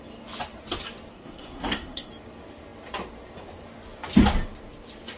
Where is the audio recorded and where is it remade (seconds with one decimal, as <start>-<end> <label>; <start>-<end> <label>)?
0.0-1.1 recorded; 1.1-2.1 remade; 2.1-5.2 recorded